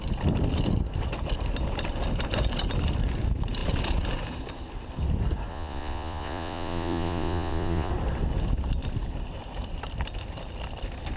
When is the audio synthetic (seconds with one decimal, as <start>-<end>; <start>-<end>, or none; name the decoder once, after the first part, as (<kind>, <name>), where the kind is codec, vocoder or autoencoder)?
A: 5.5-7.9 (vocoder, Vocos)